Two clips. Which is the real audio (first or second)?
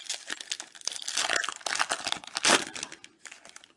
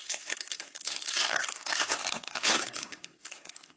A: first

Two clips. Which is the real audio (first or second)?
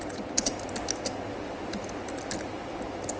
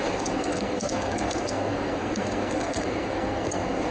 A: first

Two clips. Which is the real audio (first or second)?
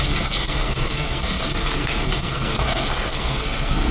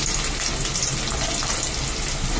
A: second